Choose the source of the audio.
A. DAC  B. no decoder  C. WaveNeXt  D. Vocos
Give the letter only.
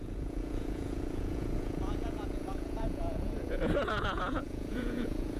D